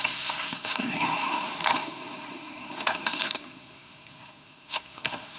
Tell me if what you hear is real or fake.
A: fake